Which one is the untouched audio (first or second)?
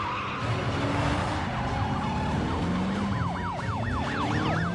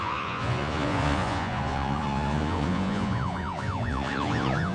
first